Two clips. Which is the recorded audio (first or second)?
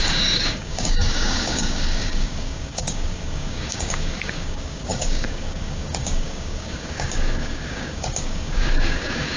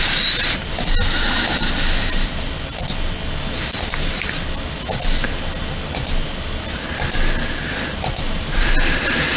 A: second